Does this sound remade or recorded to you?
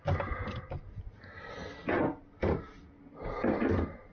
recorded